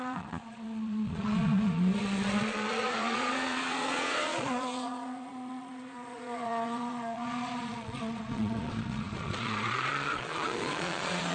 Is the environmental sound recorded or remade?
remade